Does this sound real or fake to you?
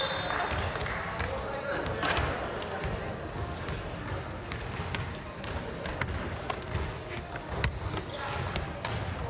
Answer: real